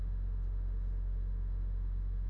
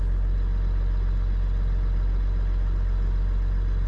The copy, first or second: first